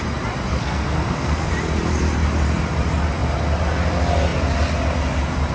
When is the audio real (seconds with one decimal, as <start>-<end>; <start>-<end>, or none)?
0.0-0.5; 1.5-5.5